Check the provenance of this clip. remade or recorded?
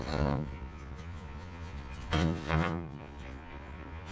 remade